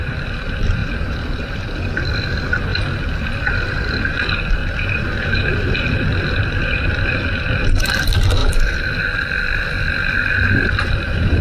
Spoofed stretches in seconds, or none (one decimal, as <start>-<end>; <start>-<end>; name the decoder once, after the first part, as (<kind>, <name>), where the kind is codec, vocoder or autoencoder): 0.8-2.3 (vocoder, BigVGAN v2); 4.6-6.4